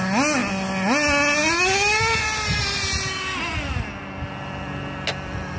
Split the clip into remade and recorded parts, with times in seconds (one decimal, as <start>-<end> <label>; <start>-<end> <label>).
0.0-5.6 recorded